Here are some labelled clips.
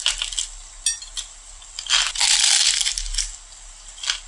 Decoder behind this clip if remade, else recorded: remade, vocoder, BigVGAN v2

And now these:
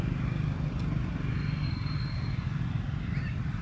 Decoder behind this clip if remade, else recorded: recorded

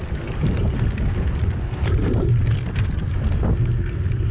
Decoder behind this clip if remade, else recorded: recorded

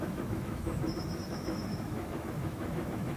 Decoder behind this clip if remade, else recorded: remade, autoencoder, DAC-VAE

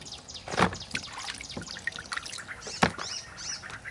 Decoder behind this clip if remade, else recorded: recorded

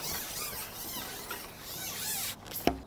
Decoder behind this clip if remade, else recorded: recorded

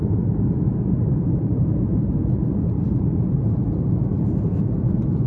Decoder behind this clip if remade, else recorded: remade, vocoder, BigVGAN v2